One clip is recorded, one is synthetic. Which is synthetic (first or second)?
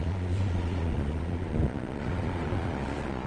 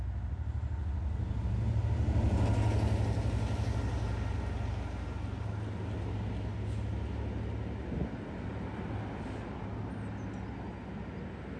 first